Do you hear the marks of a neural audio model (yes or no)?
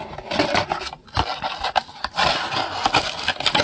no